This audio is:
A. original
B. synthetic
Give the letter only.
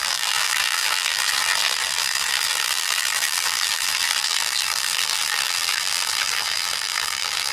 B